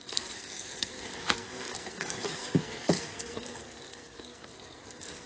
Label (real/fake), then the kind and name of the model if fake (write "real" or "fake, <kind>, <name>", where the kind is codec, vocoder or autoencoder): fake, codec, SNAC